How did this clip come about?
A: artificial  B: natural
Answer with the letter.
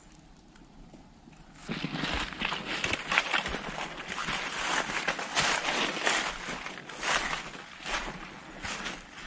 B